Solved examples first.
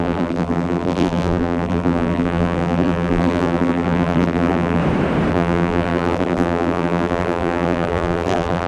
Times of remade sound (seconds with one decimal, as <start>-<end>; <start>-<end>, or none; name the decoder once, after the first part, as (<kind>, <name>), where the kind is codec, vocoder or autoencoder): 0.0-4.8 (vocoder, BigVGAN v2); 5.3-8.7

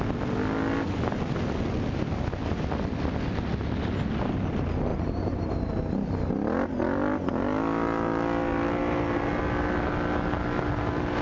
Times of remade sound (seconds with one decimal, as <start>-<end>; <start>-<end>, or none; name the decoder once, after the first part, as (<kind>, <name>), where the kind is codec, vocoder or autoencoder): 4.9-5.7 (vocoder, BigVGAN v2)

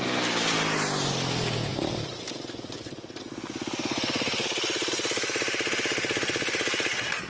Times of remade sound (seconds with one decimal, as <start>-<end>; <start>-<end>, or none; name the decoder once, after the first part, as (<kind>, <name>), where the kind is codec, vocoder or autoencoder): none